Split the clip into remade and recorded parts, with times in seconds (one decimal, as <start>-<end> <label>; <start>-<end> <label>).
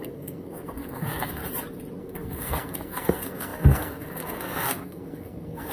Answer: 0.0-1.4 remade; 1.4-2.0 recorded; 2.0-5.7 remade